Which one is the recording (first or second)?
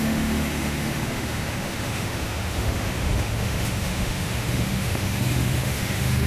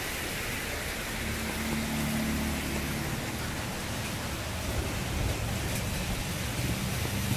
second